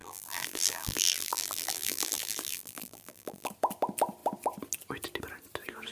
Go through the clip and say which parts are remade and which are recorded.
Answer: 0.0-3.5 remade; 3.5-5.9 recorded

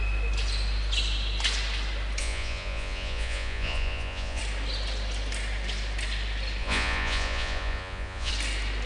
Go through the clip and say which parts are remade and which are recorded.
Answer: 0.0-2.2 recorded; 2.2-4.4 remade; 4.4-6.6 recorded; 6.6-8.3 remade; 8.3-8.9 recorded